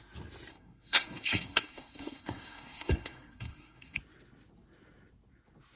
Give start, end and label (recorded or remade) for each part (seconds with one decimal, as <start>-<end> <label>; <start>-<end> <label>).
0.0-0.5 recorded; 0.5-4.0 remade; 4.0-5.8 recorded